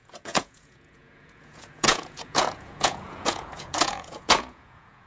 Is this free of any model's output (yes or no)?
no